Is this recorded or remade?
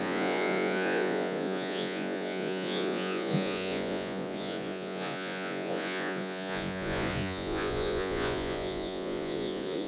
remade